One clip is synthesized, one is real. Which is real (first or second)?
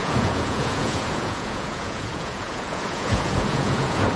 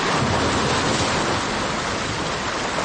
second